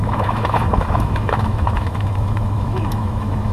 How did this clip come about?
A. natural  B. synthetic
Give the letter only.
B